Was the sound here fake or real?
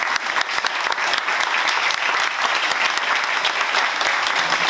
real